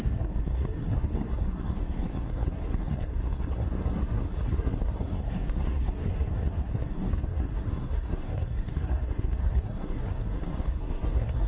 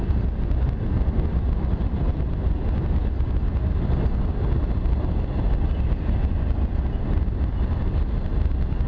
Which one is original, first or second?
second